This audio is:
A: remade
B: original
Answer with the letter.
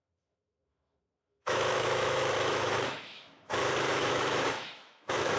A